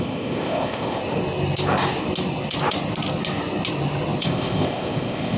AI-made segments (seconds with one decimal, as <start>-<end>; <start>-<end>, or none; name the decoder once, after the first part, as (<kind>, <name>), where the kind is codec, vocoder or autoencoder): 0.0-1.0 (codec, ZipCodec); 4.2-5.4